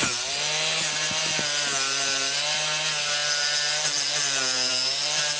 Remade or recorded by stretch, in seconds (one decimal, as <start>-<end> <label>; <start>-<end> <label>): 0.0-5.4 recorded